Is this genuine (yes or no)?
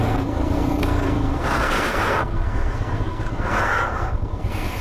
no